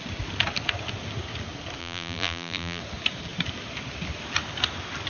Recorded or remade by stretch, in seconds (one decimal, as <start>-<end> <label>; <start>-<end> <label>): 0.0-1.8 recorded; 1.8-2.8 remade; 2.8-5.1 recorded